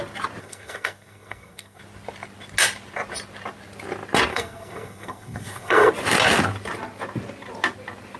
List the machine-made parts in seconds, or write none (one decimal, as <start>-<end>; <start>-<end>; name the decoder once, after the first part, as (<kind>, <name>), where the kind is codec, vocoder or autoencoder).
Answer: 0.4-1.8 (codec, SNAC); 4.3-5.9